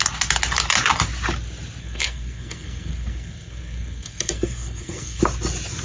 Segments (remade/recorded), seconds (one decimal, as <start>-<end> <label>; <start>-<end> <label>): 0.0-1.8 recorded; 1.8-5.2 remade; 5.2-5.8 recorded